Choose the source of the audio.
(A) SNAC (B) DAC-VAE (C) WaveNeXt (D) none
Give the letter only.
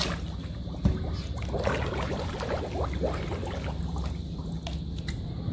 D